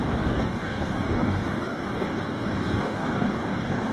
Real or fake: fake